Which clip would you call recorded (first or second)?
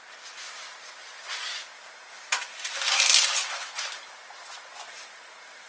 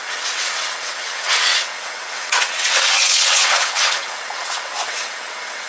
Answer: first